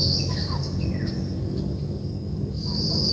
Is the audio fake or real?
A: fake